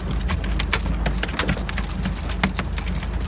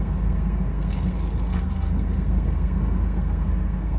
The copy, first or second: second